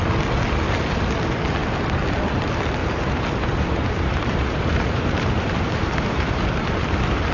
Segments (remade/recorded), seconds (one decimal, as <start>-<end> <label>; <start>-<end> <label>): 0.0-2.8 recorded; 2.8-7.3 remade